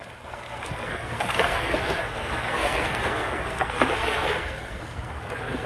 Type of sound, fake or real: fake